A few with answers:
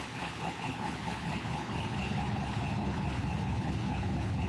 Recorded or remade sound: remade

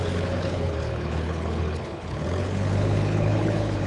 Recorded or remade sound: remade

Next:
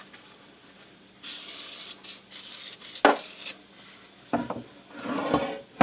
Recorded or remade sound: recorded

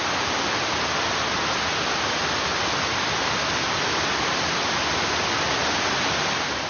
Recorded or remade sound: recorded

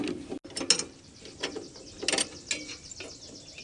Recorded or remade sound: recorded